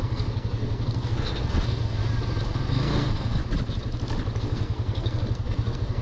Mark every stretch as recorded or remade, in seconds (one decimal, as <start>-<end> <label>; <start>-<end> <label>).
0.0-2.0 remade; 2.0-2.7 recorded; 2.7-3.4 remade; 3.4-4.4 recorded; 4.4-6.0 remade